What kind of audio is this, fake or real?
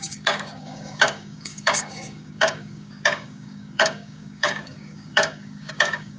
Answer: fake